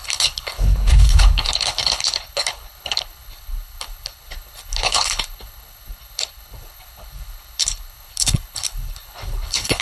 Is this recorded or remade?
remade